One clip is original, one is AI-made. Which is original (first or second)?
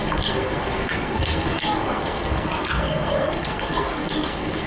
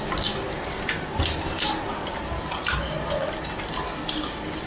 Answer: second